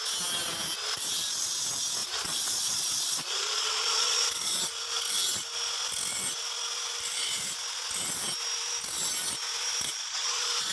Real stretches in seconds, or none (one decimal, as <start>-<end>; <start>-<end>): 0.0-2.0; 4.6-9.9